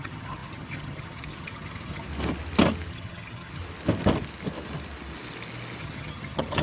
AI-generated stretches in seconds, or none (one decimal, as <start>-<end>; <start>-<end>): 0.0-2.1; 2.9-3.6; 5.8-6.6